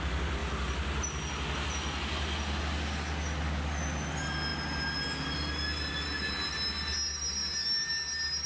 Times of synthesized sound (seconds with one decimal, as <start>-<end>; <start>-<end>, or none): none